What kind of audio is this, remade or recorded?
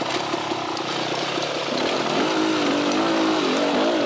recorded